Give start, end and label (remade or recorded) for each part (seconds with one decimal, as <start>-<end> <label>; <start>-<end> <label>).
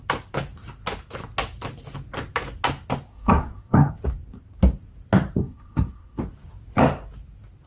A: 0.0-3.1 recorded; 3.1-3.9 remade; 3.9-5.4 recorded; 5.4-6.2 remade; 6.2-7.7 recorded